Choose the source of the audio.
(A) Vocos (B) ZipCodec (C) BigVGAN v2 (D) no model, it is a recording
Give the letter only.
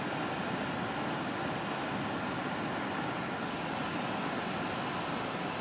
D